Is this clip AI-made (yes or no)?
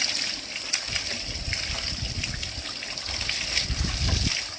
no